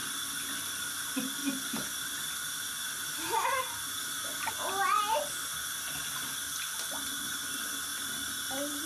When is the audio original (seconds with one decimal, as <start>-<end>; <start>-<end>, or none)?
0.0-8.9